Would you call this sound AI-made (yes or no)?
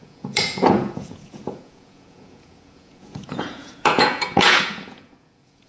yes